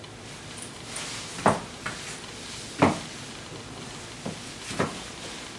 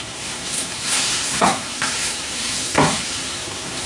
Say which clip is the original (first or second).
first